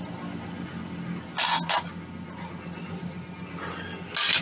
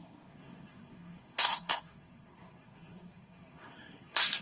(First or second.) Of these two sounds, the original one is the first